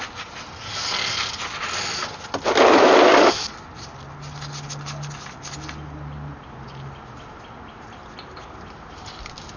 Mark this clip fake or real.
real